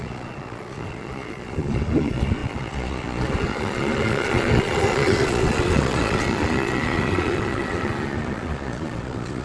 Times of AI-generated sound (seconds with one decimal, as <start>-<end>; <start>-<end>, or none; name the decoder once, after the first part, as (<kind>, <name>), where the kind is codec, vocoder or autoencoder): 0.0-9.4 (vocoder, Vocos)